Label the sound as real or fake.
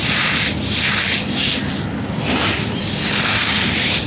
real